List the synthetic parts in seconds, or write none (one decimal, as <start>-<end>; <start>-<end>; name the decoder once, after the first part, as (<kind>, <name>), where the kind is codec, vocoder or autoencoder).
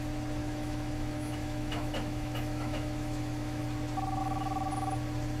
0.4-3.6 (autoencoder, DAC-VAE); 4.2-4.7